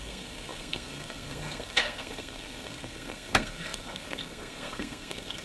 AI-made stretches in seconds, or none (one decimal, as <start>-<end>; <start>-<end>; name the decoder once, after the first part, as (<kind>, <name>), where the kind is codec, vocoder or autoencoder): 0.0-5.4 (codec, SNAC)